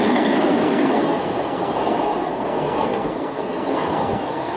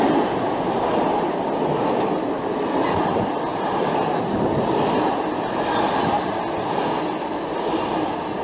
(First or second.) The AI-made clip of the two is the first